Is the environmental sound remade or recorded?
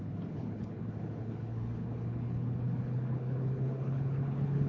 remade